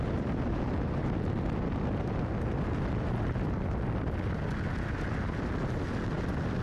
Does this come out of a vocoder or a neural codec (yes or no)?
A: no